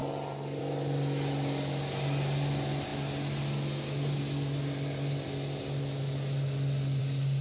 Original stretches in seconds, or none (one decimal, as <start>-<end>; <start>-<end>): 0.0-7.4